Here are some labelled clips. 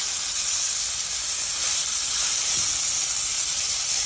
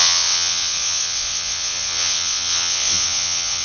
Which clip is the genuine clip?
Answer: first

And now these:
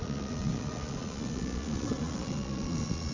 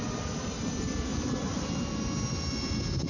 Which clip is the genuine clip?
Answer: second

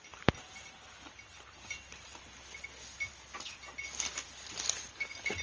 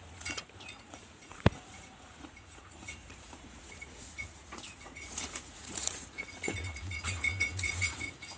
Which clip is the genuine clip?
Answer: first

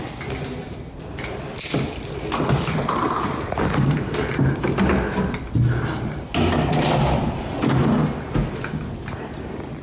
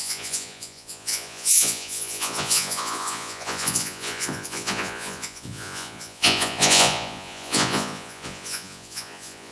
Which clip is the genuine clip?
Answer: first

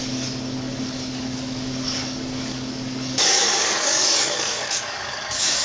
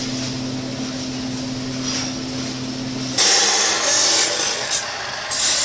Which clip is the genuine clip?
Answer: second